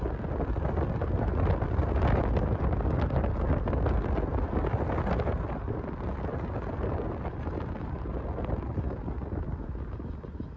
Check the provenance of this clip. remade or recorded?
recorded